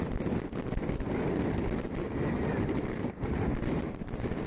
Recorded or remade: recorded